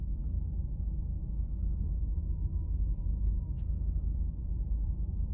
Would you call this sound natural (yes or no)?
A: no